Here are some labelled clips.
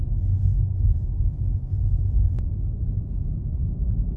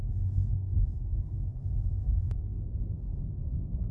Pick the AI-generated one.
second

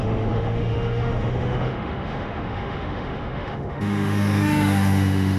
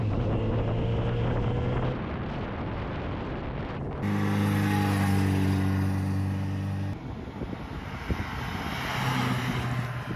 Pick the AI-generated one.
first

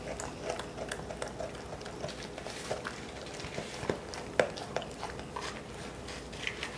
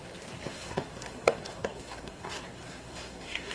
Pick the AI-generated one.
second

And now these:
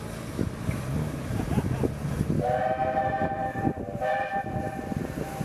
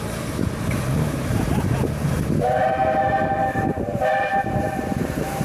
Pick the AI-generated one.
second